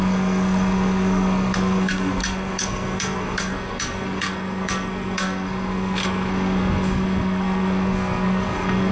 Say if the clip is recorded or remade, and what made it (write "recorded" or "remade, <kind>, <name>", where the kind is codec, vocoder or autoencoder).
remade, codec, SNAC